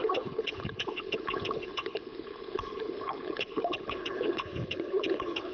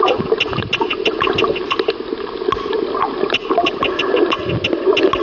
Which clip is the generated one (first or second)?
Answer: first